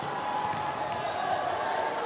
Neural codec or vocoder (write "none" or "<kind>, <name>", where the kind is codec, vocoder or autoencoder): none